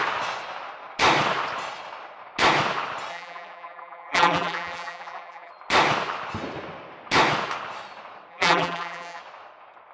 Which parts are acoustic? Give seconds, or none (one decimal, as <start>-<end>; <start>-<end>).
0.0-3.1; 5.5-8.3; 9.2-9.9

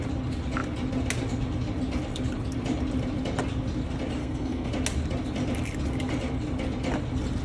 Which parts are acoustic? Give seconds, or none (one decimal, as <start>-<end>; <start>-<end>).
0.0-4.2; 4.7-7.4

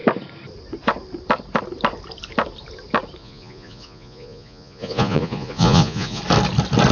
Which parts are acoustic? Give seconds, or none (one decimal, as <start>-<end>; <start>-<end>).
0.0-3.2; 6.2-6.9

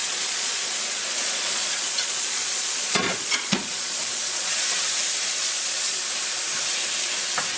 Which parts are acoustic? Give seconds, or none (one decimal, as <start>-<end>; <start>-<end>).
4.6-5.4; 6.0-7.6

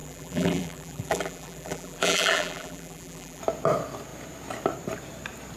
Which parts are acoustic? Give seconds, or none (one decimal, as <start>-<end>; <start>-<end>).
3.4-5.6

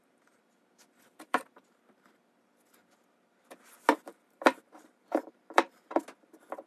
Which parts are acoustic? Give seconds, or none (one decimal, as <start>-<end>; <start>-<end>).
0.0-1.1; 1.8-3.9; 6.0-6.7

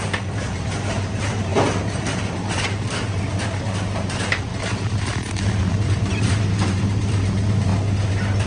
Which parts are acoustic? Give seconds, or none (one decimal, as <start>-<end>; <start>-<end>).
7.7-8.5

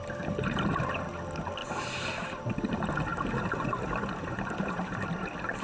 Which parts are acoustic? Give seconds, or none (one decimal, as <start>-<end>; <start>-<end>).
1.1-1.6; 2.4-3.1